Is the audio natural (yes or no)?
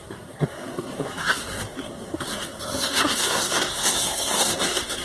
no